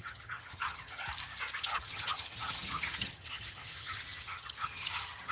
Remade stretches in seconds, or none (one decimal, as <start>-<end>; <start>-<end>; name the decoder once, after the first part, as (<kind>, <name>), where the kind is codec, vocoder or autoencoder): 0.0-1.0 (vocoder, HiFi-GAN); 1.6-5.3